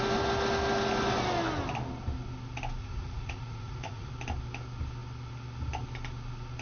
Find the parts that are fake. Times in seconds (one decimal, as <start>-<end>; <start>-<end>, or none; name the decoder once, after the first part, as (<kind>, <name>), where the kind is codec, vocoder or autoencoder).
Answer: 2.8-4.1 (vocoder, Vocos)

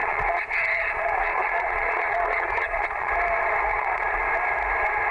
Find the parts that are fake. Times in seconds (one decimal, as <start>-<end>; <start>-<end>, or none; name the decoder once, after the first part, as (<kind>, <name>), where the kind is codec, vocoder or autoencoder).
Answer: 0.0-3.1 (vocoder, Vocos); 3.7-4.2

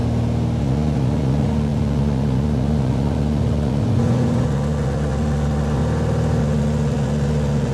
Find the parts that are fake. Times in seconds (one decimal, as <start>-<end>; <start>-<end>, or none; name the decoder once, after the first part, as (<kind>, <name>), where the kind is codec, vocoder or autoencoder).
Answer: 0.6-5.8 (vocoder, Vocos); 6.4-7.7

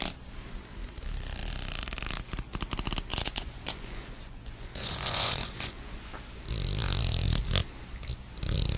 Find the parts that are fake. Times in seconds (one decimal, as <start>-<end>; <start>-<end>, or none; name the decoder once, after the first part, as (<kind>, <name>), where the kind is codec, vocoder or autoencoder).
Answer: 3.1-6.1 (vocoder, Vocos)

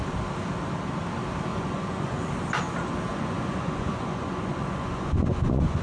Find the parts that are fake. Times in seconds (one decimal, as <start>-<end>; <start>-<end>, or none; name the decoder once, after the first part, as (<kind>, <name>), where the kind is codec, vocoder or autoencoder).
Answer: 1.5-2.3 (vocoder, Vocos); 3.1-5.8